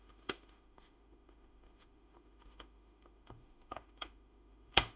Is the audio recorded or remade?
remade